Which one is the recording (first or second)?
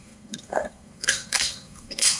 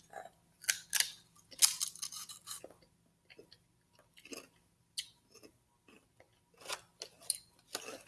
second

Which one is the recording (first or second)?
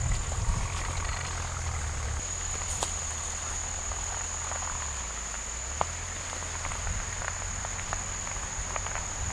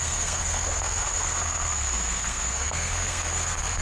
first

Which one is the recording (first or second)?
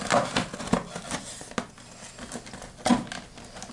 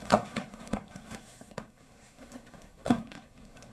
first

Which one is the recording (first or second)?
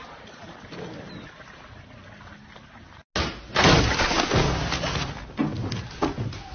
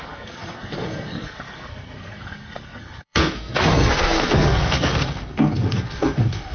first